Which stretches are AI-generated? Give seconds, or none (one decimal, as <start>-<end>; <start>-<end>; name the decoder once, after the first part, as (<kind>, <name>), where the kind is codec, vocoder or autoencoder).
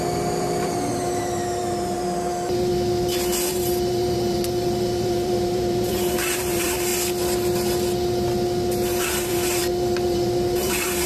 0.0-2.7 (vocoder, BigVGAN v2); 3.5-6.9; 9.0-9.6; 10.1-11.1